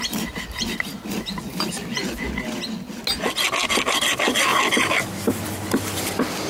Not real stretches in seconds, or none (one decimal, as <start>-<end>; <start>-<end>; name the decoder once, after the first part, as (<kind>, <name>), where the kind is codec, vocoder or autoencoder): none